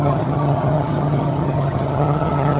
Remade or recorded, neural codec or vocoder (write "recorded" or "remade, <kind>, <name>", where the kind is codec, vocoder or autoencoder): remade, vocoder, HiFi-GAN